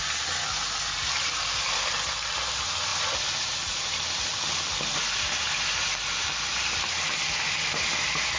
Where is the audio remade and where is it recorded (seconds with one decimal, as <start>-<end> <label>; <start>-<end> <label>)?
0.0-8.4 recorded